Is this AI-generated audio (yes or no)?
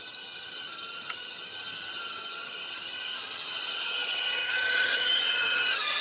yes